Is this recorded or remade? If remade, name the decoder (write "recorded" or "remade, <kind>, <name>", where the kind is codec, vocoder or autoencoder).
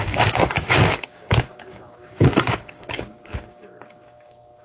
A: remade, codec, DAC